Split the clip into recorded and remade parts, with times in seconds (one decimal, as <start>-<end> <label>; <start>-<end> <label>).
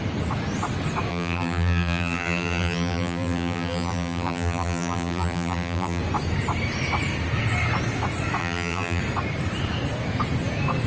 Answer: 0.0-1.1 recorded; 1.1-6.0 remade; 6.0-8.4 recorded; 8.4-9.0 remade; 9.0-10.9 recorded